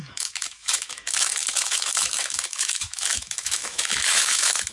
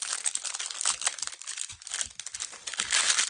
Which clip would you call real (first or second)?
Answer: second